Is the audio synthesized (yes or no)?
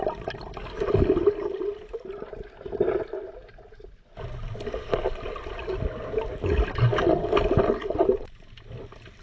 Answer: no